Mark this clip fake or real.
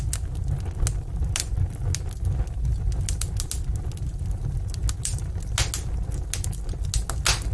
real